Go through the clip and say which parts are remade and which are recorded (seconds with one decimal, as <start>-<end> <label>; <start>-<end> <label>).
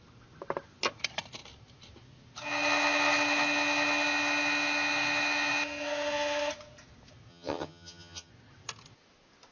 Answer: 0.0-7.3 recorded; 7.3-8.3 remade; 8.3-9.5 recorded